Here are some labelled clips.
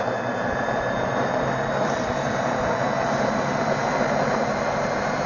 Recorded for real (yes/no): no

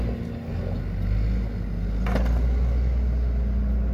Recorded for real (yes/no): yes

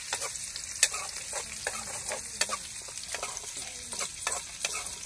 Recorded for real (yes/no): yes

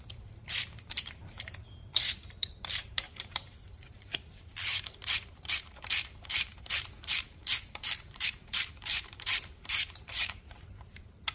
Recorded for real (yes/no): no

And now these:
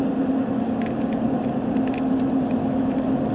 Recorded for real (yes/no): yes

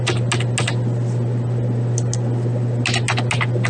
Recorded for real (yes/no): yes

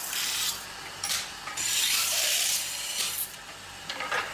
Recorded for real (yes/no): no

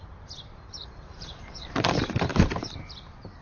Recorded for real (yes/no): no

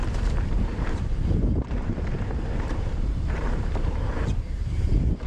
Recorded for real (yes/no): no